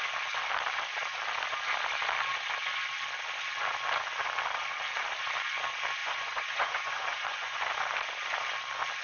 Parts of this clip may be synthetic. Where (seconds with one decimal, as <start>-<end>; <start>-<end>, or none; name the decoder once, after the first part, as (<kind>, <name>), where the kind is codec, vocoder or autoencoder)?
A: 6.0-7.6 (vocoder, Vocos)

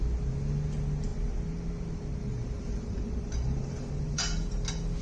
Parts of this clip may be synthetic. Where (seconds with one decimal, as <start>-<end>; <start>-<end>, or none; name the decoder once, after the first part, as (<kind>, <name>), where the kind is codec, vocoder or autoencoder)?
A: 2.3-4.2 (vocoder, BigVGAN v2)

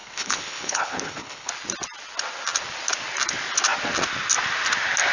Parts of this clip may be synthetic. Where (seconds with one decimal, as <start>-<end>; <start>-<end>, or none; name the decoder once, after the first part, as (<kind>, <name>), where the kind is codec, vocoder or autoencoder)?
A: 0.0-1.5 (codec, HILCodec)

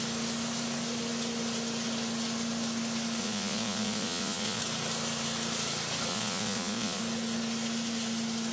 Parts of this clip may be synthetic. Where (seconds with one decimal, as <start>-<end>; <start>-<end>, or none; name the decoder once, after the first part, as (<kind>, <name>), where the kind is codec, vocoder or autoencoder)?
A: 3.2-4.6 (vocoder, Vocos); 6.1-7.0